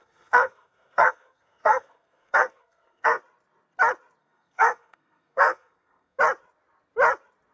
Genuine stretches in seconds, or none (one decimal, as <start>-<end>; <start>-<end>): 3.2-4.2; 6.2-7.5